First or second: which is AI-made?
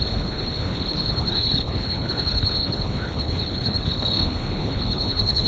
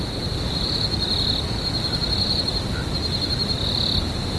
first